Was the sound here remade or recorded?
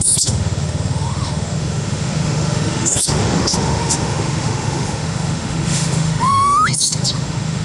remade